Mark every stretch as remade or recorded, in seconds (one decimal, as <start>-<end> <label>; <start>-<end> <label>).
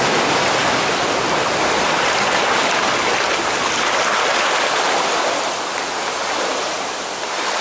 0.0-7.6 recorded